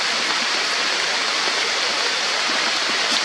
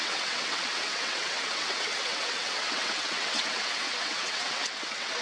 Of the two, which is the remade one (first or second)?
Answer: second